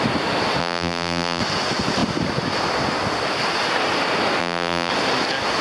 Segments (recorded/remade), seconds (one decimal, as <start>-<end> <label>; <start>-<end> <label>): 0.0-0.6 recorded; 0.6-1.4 remade; 1.4-4.4 recorded; 4.4-4.9 remade; 4.9-5.6 recorded